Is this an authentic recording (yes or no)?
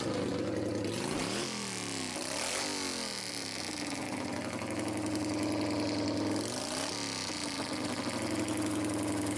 yes